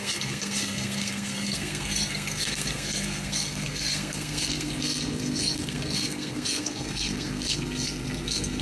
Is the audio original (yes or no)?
no